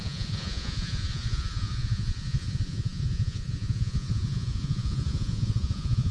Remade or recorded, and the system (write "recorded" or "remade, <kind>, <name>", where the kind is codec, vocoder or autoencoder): remade, vocoder, Vocos